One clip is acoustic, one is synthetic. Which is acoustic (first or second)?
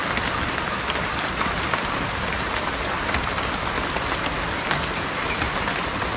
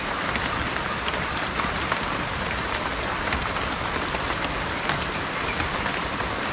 first